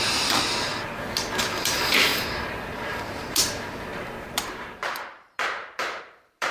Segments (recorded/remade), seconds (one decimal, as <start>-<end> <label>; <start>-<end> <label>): 0.0-0.7 remade; 0.7-1.6 recorded; 1.6-6.5 remade